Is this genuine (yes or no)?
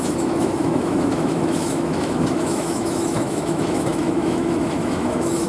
no